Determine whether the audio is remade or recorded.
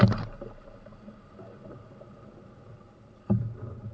recorded